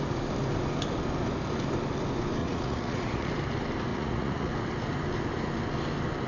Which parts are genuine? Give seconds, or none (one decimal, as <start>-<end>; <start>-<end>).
0.0-2.4; 3.3-3.9; 4.5-6.3